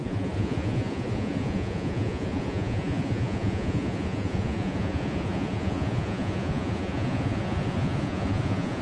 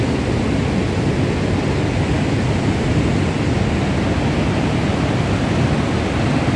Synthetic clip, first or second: first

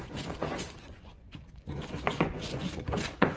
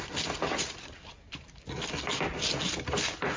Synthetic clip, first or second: first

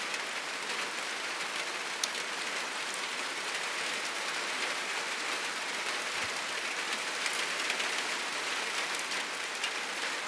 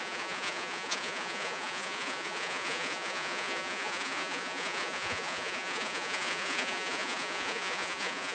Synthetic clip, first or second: second